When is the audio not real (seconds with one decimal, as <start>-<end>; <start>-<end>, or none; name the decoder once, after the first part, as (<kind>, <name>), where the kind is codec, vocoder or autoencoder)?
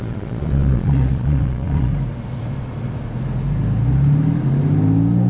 0.0-1.9 (vocoder, Vocos)